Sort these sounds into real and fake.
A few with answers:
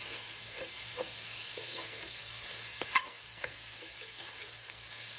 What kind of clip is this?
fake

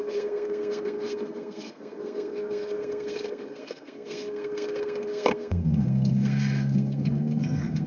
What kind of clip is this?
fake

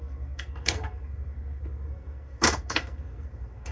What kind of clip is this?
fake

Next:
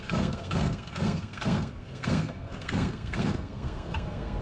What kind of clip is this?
fake